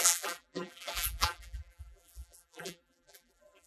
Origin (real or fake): fake